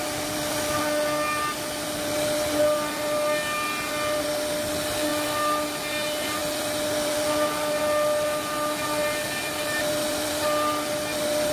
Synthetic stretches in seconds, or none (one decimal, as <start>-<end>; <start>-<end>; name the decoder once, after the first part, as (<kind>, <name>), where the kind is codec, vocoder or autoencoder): none